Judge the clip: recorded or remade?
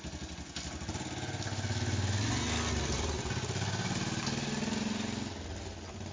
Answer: recorded